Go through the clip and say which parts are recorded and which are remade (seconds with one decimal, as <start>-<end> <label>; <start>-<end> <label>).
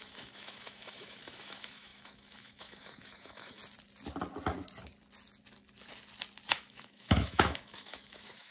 0.0-3.6 remade; 3.6-6.5 recorded; 6.5-8.5 remade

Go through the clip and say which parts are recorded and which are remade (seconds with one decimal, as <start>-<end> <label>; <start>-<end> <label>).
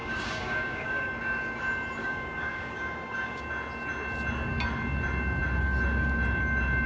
0.0-1.1 remade; 1.1-2.0 recorded; 2.0-3.4 remade; 3.4-6.9 recorded